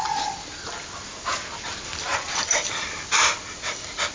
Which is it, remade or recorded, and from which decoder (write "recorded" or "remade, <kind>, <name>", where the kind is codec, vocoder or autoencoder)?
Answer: remade, vocoder, BigVGAN v2